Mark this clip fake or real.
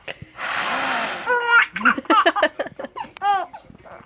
real